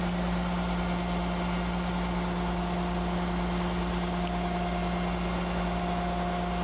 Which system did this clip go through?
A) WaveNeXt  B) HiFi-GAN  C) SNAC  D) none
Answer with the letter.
D